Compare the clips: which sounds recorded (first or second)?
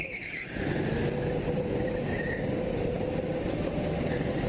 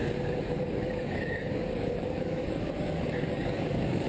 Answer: first